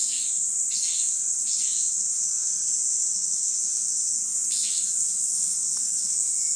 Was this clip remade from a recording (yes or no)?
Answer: yes